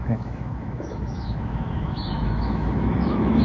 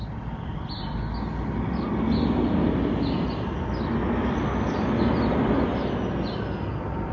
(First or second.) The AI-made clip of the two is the first